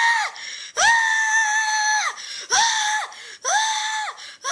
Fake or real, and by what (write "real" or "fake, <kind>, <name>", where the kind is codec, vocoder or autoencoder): real